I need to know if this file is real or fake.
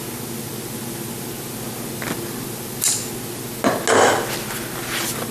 real